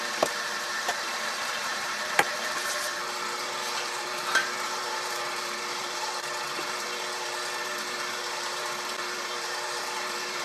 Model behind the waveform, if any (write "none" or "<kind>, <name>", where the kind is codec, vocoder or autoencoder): vocoder, BigVGAN v2